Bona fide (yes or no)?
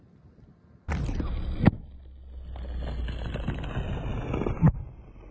yes